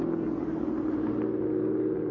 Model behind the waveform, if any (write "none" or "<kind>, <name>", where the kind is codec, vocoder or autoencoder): none